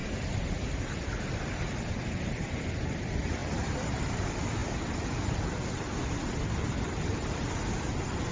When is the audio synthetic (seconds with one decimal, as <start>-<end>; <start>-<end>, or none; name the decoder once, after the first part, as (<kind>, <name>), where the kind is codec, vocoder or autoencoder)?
0.0-4.6 (vocoder, BigVGAN v2); 5.4-8.3